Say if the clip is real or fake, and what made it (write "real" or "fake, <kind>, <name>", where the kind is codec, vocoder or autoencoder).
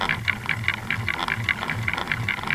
real